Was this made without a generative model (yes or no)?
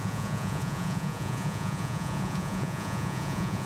no